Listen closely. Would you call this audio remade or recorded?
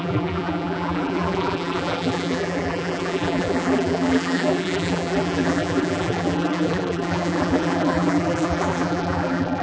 remade